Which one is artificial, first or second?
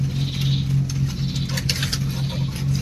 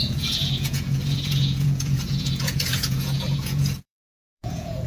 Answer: second